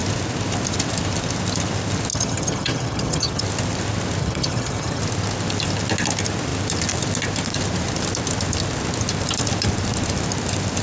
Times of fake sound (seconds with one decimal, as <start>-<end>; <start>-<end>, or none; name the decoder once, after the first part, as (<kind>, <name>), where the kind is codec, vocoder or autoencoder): 2.1-3.4 (vocoder, HiFi-GAN); 4.2-5.0